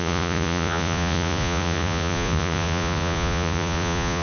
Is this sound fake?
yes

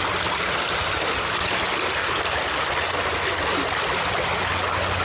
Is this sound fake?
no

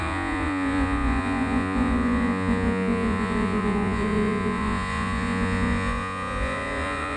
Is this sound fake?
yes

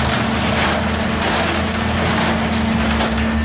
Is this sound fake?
no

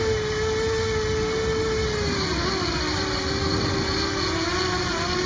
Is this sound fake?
no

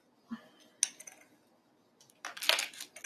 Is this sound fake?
no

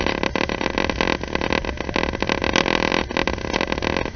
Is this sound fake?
no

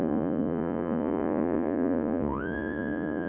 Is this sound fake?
yes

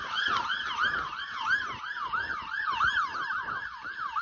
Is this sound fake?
no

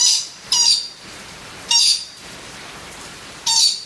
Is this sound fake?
yes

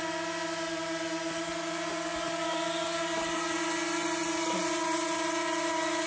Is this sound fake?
no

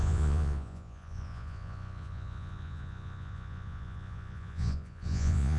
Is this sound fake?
yes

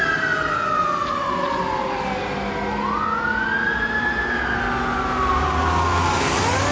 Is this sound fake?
no